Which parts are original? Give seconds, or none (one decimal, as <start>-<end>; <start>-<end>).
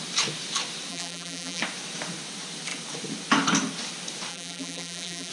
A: 0.0-0.9; 1.6-4.3